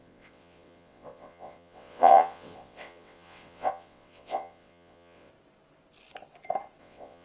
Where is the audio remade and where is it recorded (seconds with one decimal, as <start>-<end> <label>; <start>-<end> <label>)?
0.0-5.3 remade; 5.3-6.8 recorded; 6.8-7.2 remade